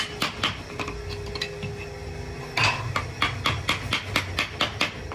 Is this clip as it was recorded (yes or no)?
yes